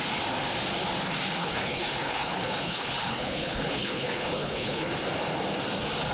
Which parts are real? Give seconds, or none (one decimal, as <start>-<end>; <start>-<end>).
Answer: 0.0-1.4; 4.9-6.1